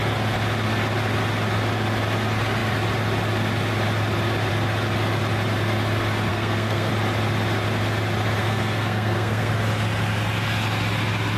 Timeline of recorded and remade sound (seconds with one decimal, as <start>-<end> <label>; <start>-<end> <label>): 0.0-6.3 recorded; 6.3-6.9 remade; 6.9-8.4 recorded; 8.4-9.5 remade; 9.5-11.4 recorded